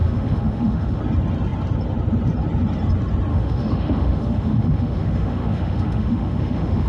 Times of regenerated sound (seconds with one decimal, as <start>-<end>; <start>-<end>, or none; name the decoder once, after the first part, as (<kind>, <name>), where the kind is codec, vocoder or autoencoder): 0.0-1.0 (autoencoder, DAC-VAE); 3.3-6.9